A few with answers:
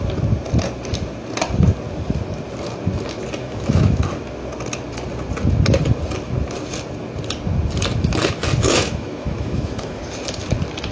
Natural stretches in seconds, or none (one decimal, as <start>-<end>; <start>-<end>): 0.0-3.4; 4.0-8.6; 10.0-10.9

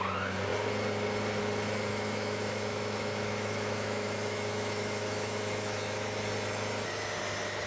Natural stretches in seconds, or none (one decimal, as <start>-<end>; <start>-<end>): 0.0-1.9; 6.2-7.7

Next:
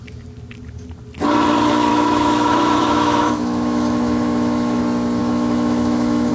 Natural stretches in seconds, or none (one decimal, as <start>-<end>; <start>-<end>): 0.0-1.9; 4.8-5.2

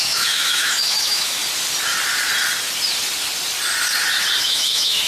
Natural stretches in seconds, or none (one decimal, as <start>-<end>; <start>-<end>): 1.4-4.4

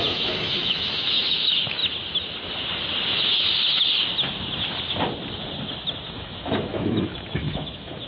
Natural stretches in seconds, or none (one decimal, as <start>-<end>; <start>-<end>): 1.8-6.1

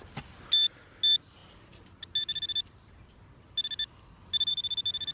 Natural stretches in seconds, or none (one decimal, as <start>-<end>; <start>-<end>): 0.0-5.1

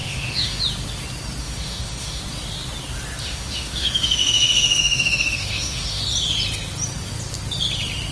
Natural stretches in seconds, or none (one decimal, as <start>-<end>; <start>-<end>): 0.6-1.4; 2.2-3.2; 6.0-8.1